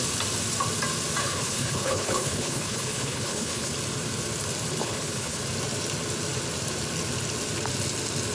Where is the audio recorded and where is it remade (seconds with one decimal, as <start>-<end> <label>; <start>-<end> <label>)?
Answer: 0.0-1.2 recorded; 1.2-3.7 remade; 3.7-4.8 recorded; 4.8-5.4 remade; 5.4-8.3 recorded